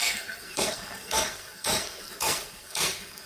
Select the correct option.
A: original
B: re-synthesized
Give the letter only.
B